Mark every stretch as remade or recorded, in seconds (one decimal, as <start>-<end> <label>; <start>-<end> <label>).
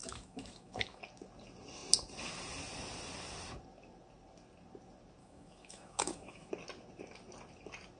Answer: 0.0-1.0 remade; 1.0-5.2 recorded; 5.2-6.5 remade; 6.5-8.0 recorded